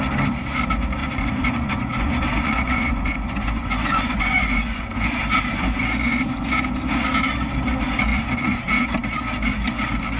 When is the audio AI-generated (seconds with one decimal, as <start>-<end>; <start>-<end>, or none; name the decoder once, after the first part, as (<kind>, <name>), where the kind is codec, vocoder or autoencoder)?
1.0-5.2 (vocoder, Vocos); 8.1-8.6